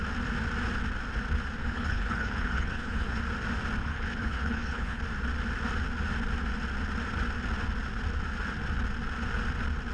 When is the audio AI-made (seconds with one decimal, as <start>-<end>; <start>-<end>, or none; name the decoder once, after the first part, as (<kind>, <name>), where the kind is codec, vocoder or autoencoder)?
1.6-3.2 (codec, HILCodec); 3.8-5.0